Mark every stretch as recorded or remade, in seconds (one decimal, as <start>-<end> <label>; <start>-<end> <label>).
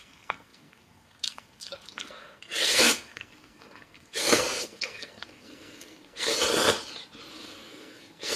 0.0-6.3 remade; 6.3-7.3 recorded; 7.3-8.4 remade